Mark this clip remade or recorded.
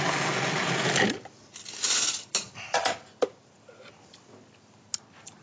recorded